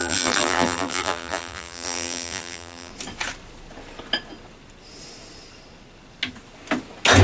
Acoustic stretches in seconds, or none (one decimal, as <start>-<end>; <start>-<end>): 2.9-7.2